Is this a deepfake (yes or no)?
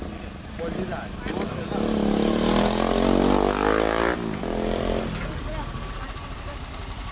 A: no